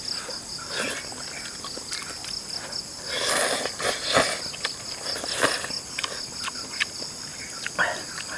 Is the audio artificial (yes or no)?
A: no